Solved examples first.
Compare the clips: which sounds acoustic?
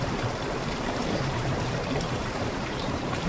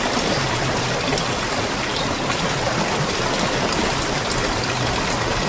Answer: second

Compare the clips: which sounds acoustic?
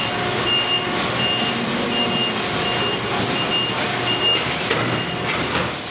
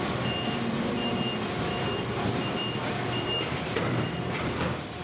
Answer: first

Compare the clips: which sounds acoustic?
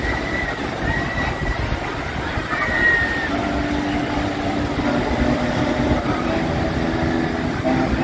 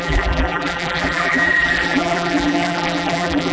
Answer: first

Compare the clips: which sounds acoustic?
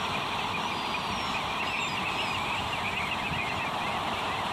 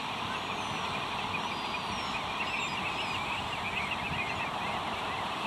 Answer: second